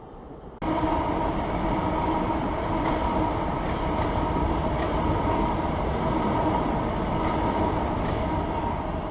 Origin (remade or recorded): recorded